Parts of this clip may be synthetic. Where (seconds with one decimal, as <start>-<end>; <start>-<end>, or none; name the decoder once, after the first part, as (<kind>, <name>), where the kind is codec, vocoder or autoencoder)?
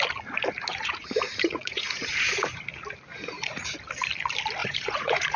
0.7-2.6 (vocoder, Vocos); 3.1-3.7; 4.6-5.4